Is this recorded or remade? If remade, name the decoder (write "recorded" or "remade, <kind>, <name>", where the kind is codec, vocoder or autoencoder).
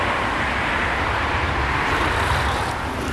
recorded